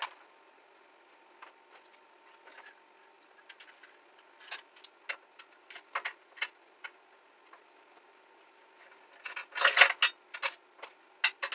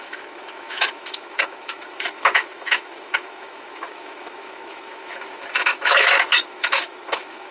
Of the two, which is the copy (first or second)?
second